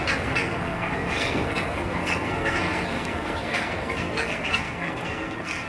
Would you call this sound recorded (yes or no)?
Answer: no